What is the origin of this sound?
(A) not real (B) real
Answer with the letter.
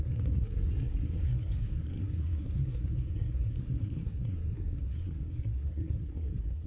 A